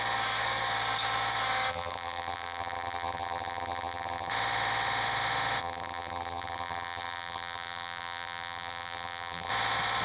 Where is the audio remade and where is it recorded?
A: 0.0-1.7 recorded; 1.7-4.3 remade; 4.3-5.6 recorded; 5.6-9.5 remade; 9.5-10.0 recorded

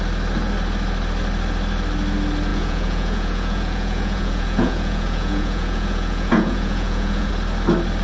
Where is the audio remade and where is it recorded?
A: 0.0-2.5 recorded; 2.5-7.3 remade; 7.3-8.0 recorded